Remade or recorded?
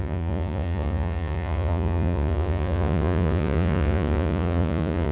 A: remade